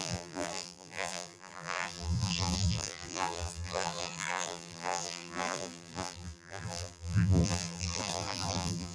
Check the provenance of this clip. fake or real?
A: fake